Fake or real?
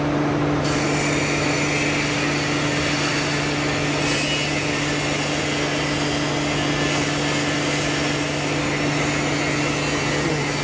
real